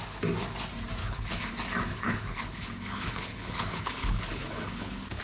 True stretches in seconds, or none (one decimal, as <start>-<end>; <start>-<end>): 0.0-1.0; 1.5-1.9